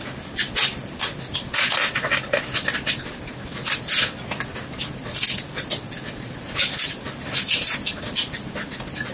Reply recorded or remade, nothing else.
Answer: recorded